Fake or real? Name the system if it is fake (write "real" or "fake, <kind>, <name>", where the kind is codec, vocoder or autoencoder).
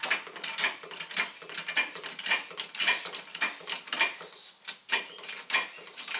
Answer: real